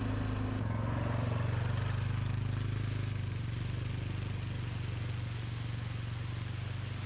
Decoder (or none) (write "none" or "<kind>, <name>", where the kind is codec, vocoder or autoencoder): none